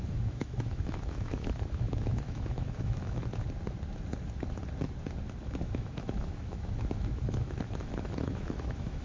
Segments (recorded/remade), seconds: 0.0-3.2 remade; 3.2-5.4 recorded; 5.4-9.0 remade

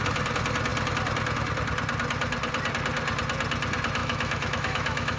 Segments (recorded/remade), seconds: 0.0-4.0 recorded; 4.0-5.2 remade

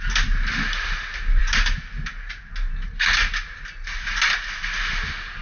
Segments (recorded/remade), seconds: 0.0-5.4 recorded

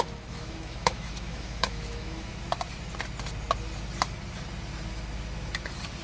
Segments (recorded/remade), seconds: 0.0-2.3 remade; 2.3-6.0 recorded

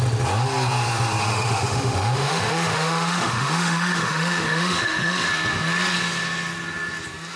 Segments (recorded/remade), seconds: 0.0-1.2 recorded; 1.2-5.3 remade; 5.3-7.4 recorded

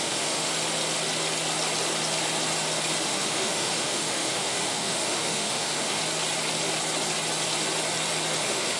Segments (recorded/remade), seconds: 0.0-0.5 remade; 0.5-3.0 recorded; 3.0-6.0 remade; 6.0-8.4 recorded; 8.4-8.8 remade

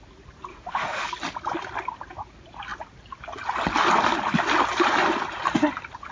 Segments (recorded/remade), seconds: 0.0-0.5 recorded; 0.5-1.1 remade; 1.1-6.1 recorded

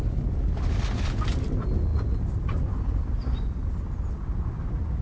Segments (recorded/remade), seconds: 0.0-5.0 recorded